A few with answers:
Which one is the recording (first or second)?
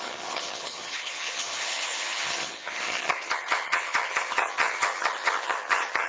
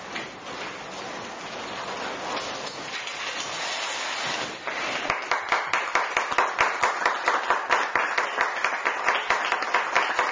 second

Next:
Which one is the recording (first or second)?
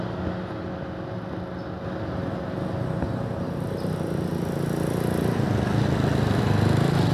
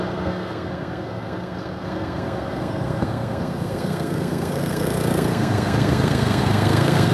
first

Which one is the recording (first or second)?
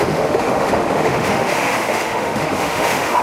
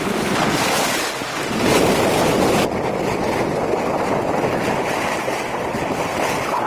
second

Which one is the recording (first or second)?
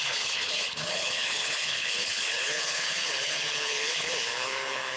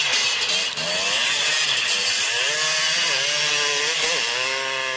second